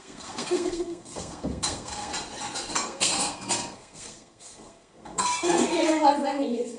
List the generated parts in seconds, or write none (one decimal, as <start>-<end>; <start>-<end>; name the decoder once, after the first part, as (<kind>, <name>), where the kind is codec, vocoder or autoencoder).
0.0-2.1 (codec, SNAC); 2.7-6.8